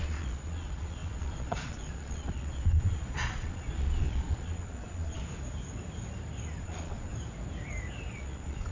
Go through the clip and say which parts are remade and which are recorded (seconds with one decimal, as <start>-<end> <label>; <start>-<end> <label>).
0.0-5.2 remade; 5.2-6.6 recorded; 6.6-7.1 remade; 7.1-8.1 recorded; 8.1-8.7 remade

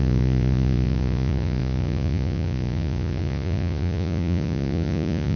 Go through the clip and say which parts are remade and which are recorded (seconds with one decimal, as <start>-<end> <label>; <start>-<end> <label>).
0.0-5.4 remade

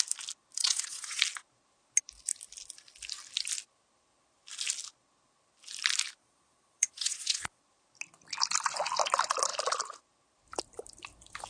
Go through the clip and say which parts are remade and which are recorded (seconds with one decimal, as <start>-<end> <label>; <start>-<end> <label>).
0.0-0.6 recorded; 0.6-1.2 remade; 1.2-6.2 recorded; 6.2-7.6 remade; 7.6-11.5 recorded